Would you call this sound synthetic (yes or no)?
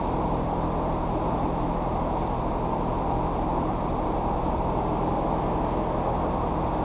no